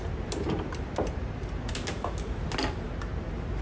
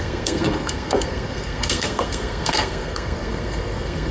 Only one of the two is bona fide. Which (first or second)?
first